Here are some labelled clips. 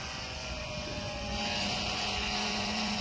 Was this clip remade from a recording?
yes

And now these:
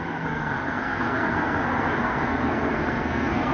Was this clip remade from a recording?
yes